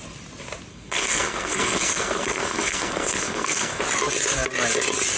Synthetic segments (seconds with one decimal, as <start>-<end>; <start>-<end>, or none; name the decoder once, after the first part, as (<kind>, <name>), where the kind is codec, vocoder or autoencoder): 0.7-3.8 (codec, SNAC)